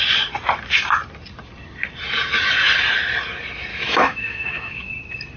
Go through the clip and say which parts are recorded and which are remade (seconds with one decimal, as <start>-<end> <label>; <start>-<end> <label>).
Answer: 0.0-3.7 recorded; 3.7-4.9 remade; 4.9-5.4 recorded